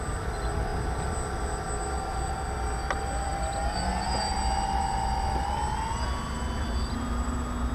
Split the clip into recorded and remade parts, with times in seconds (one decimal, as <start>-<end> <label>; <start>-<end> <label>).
0.0-7.7 recorded